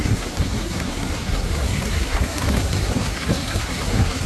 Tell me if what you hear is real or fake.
fake